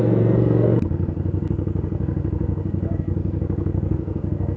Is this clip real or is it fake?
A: fake